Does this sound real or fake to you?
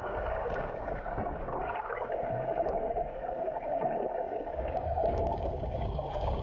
fake